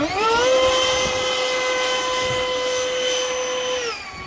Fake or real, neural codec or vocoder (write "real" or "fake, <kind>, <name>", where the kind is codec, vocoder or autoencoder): real